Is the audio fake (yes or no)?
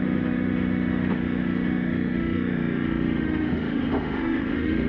yes